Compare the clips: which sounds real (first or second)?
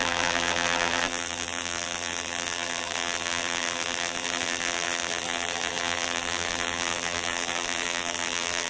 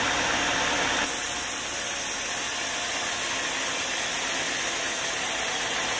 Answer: second